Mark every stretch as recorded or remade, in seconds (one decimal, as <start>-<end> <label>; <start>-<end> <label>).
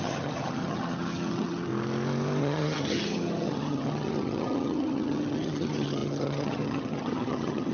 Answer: 0.0-1.7 remade; 1.7-2.4 recorded; 2.4-7.7 remade